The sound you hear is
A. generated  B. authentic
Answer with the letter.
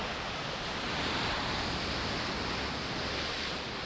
B